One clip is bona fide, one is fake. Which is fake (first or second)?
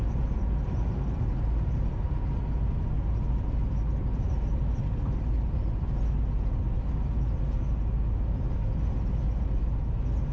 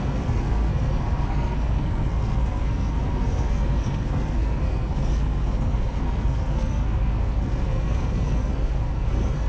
second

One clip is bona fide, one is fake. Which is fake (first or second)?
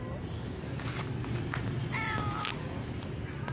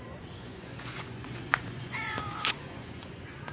second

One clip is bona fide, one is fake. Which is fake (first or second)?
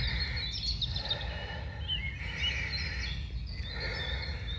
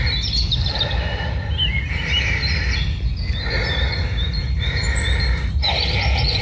second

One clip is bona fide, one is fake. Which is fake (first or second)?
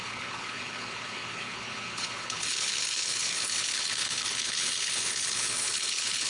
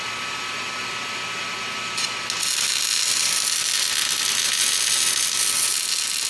first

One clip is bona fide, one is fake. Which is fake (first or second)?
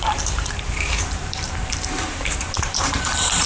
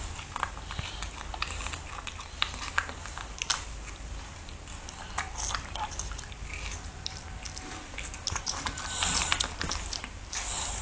first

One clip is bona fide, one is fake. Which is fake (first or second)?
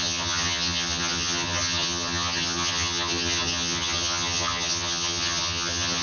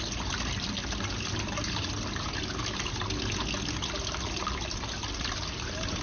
first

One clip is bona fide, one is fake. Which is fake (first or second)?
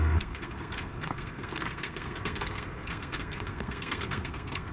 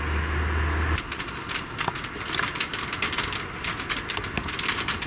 first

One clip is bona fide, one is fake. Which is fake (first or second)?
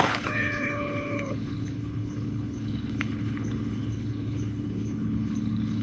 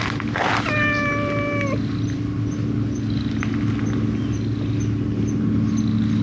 first